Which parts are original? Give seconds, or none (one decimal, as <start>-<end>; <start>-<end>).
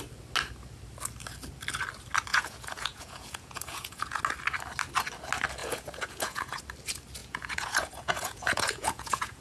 0.0-2.3; 4.2-5.6; 6.6-7.2